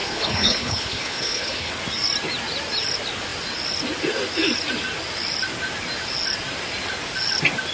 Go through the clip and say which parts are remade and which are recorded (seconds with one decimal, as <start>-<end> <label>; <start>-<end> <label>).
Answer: 0.0-1.7 remade; 1.7-7.7 recorded

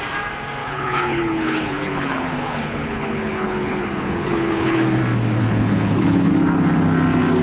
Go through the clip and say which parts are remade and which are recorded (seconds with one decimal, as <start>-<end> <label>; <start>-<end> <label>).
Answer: 0.0-0.6 recorded; 0.6-5.0 remade; 5.0-5.4 recorded; 5.4-6.3 remade; 6.3-7.4 recorded

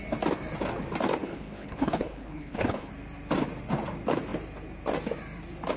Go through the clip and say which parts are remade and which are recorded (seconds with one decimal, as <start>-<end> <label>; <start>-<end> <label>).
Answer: 0.0-1.2 recorded; 1.2-2.9 remade; 2.9-5.8 recorded

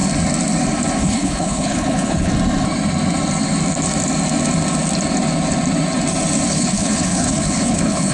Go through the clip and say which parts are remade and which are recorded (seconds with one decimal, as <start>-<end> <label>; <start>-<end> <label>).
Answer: 0.0-1.0 recorded; 1.0-2.3 remade; 2.3-6.5 recorded; 6.5-8.1 remade

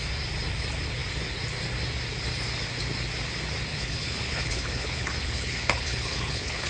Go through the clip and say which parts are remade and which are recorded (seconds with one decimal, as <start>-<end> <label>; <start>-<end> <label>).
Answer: 0.0-3.7 recorded; 3.7-6.7 remade

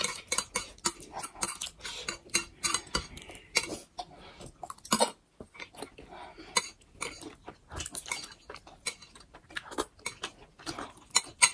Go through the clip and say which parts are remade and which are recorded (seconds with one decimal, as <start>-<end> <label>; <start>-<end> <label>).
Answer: 0.0-11.5 recorded

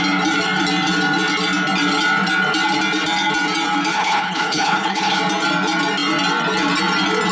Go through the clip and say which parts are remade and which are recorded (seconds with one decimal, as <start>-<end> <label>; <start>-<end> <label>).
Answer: 0.0-3.9 recorded; 3.9-5.2 remade; 5.2-7.3 recorded

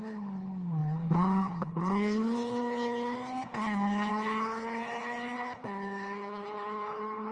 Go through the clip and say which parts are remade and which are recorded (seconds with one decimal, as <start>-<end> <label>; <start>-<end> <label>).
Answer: 0.0-7.3 remade